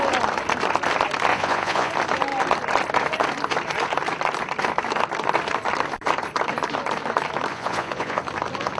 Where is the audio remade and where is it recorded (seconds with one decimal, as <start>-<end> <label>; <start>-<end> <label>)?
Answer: 0.0-1.3 recorded; 1.3-1.9 remade; 1.9-7.5 recorded; 7.5-8.2 remade; 8.2-8.8 recorded

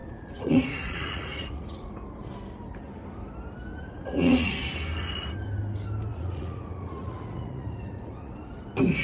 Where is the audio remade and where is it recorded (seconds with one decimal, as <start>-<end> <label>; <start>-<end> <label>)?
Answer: 0.0-1.9 remade; 1.9-3.7 recorded; 3.7-4.5 remade; 4.5-6.1 recorded; 6.1-8.6 remade; 8.6-9.0 recorded

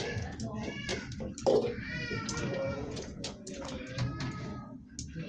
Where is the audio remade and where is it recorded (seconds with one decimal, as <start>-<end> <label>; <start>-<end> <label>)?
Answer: 0.0-2.5 recorded; 2.5-3.6 remade; 3.6-5.3 recorded

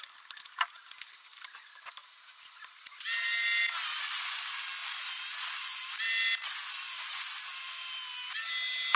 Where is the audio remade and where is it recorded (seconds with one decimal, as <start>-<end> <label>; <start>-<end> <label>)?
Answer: 0.0-9.0 recorded